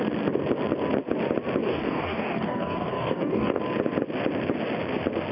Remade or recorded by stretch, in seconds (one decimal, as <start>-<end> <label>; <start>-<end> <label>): 0.0-1.6 recorded; 1.6-3.6 remade; 3.6-5.3 recorded